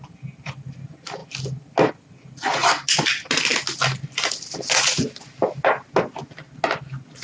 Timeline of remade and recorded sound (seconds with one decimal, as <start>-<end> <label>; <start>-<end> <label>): 0.0-7.2 recorded